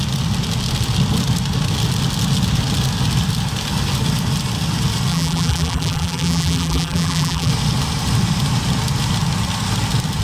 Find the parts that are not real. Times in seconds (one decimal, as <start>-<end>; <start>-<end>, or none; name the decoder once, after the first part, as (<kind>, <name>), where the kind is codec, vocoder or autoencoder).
5.1-7.5 (vocoder, BigVGAN v2)